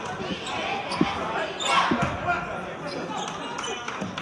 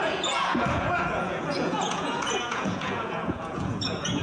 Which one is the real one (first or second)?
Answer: first